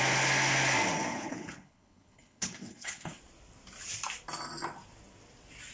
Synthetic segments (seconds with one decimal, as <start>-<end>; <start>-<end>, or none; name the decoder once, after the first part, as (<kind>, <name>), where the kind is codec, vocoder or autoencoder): 1.1-3.2 (codec, HILCodec)